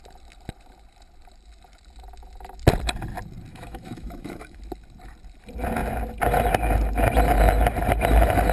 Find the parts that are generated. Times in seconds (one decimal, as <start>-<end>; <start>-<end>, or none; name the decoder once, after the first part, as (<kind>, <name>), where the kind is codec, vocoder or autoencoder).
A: 3.5-4.6 (autoencoder, DAC-VAE)